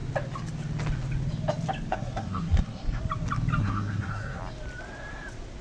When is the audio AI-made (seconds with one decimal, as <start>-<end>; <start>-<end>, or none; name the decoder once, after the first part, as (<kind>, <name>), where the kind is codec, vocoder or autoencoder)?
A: 1.9-3.0 (codec, SNAC); 3.6-4.4